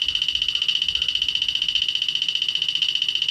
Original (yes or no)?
yes